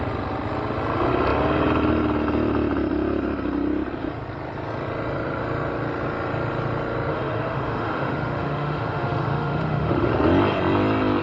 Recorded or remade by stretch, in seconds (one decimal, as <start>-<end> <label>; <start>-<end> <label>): 0.0-7.1 recorded; 7.1-10.1 remade; 10.1-11.2 recorded